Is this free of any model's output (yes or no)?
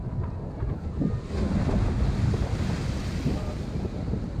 yes